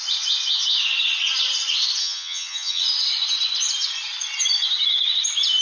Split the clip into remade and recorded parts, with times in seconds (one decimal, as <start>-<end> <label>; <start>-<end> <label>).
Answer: 0.0-2.0 recorded; 2.0-2.8 remade; 2.8-5.6 recorded

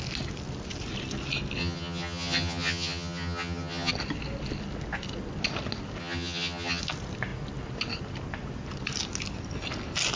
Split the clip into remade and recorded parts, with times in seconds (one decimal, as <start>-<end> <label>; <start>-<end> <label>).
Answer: 0.0-1.6 recorded; 1.6-3.9 remade; 3.9-6.0 recorded; 6.0-6.8 remade; 6.8-10.2 recorded